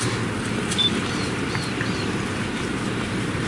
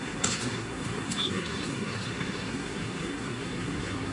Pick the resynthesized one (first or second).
second